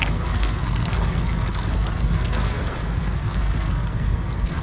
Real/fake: fake